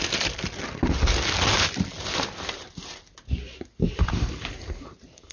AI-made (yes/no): no